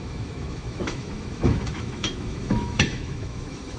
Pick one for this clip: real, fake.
fake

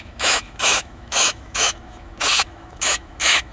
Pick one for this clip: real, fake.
fake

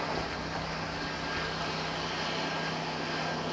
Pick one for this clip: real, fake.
real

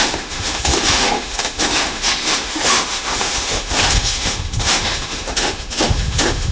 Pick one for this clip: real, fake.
fake